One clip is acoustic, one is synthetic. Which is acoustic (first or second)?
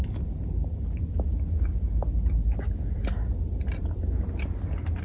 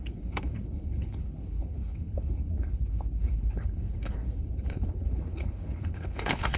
first